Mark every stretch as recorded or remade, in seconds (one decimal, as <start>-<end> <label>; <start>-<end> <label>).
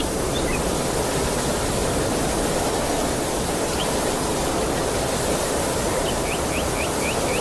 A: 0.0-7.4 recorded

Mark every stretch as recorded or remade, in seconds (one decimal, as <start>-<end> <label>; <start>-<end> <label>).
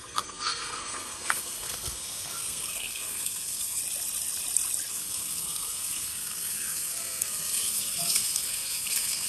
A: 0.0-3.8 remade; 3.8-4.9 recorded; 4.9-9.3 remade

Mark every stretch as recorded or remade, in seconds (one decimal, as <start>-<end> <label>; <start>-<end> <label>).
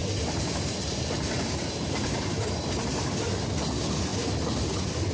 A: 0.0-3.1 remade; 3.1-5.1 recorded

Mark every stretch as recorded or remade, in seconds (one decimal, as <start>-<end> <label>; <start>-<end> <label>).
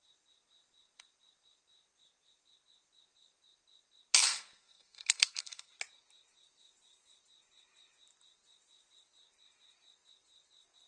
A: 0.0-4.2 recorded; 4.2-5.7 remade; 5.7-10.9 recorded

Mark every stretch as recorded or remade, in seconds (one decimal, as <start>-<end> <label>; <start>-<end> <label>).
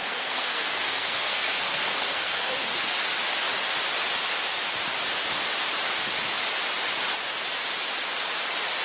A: 0.0-2.5 remade; 2.5-8.8 recorded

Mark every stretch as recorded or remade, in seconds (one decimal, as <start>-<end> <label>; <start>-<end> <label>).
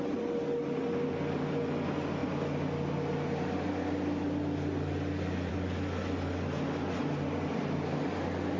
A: 0.0-8.6 recorded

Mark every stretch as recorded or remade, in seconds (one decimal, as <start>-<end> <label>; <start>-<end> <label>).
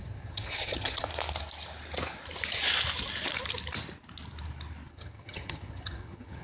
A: 0.0-1.1 remade; 1.1-4.9 recorded; 4.9-6.4 remade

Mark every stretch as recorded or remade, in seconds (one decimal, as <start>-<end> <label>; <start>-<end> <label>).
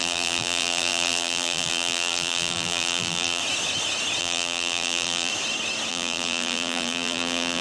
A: 0.0-3.4 remade; 3.4-4.2 recorded; 4.2-5.3 remade; 5.3-5.9 recorded; 5.9-7.6 remade